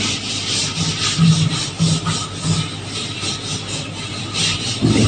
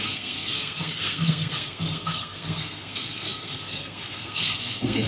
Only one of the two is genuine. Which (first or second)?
first